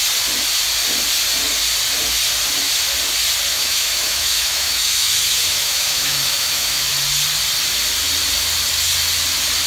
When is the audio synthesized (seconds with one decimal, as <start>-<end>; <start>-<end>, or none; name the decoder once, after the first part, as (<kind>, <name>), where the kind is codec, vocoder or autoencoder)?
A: 3.5-6.9 (autoencoder, DAC-VAE)